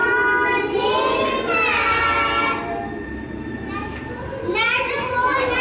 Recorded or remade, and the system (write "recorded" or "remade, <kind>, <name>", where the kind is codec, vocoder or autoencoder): recorded